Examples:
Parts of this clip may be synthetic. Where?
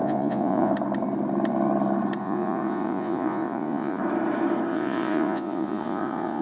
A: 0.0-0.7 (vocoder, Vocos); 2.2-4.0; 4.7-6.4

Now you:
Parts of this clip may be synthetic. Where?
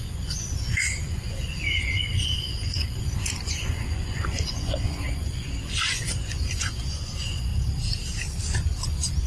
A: 0.0-7.5 (vocoder, Vocos); 8.9-9.3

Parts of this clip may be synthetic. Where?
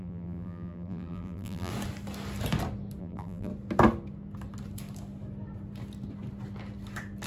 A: 0.0-1.7 (vocoder, BigVGAN v2); 3.0-3.5